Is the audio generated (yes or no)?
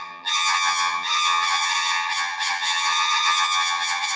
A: yes